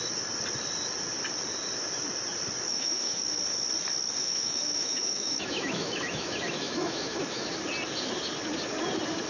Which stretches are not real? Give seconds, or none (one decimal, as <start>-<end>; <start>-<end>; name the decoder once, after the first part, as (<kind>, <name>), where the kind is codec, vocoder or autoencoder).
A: 2.7-3.2 (autoencoder, DAC-VAE); 4.2-7.5